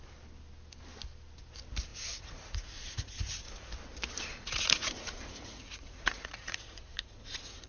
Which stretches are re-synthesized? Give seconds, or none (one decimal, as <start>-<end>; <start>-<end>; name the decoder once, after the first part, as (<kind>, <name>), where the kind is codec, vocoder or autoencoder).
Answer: 1.9-3.7 (vocoder, Vocos); 4.3-7.7